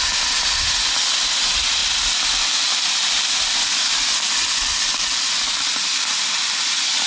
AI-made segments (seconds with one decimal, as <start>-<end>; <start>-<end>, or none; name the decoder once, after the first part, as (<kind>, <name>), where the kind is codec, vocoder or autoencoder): none